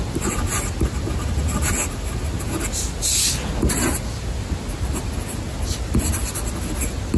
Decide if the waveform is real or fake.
real